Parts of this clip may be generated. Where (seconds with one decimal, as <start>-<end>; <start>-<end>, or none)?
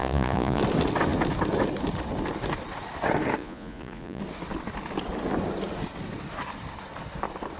0.0-0.6; 3.4-4.2